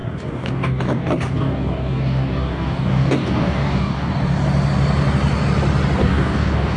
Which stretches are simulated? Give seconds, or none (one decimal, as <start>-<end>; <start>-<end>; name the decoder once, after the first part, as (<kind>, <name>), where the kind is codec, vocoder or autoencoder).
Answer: 0.0-4.1 (codec, DAC); 6.0-6.8